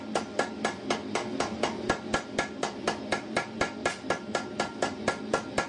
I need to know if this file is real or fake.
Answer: real